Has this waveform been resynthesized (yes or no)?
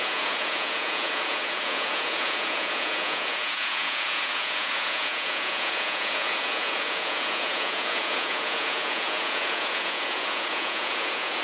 yes